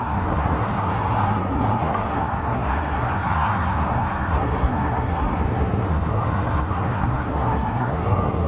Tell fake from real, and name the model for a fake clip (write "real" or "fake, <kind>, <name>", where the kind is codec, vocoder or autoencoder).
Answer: fake, codec, SNAC